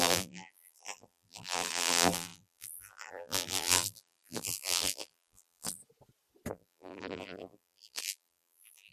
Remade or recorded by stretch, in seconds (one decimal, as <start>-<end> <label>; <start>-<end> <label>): 0.0-5.8 remade; 5.8-6.5 recorded; 6.5-8.9 remade